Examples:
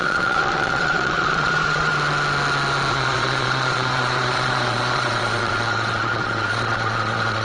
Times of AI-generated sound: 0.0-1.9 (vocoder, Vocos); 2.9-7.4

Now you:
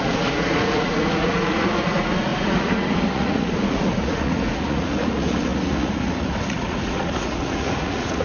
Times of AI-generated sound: 0.0-8.2 (vocoder, Vocos)

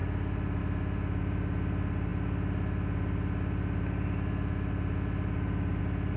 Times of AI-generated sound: none

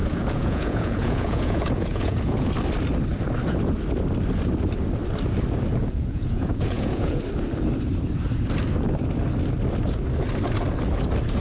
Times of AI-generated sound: 0.0-2.5 (vocoder, Vocos); 5.7-7.2